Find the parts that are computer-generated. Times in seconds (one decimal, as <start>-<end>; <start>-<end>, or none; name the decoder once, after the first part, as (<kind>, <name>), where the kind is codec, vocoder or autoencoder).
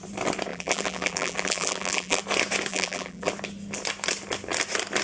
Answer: 0.5-2.2 (vocoder, BigVGAN v2); 2.7-3.3